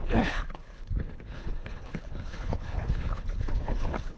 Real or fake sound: fake